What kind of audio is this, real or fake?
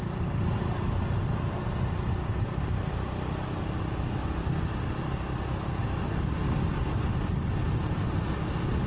real